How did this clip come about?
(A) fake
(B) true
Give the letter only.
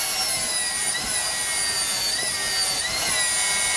B